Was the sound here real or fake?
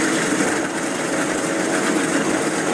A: fake